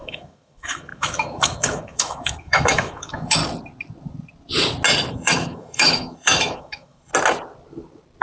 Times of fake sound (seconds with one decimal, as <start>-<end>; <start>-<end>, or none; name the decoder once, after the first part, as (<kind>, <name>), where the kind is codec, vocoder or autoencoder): 0.0-3.4 (autoencoder, DAC-VAE); 5.1-7.1